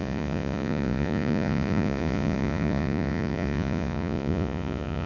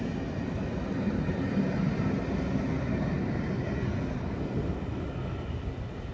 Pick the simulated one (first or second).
first